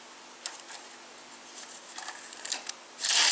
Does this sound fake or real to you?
real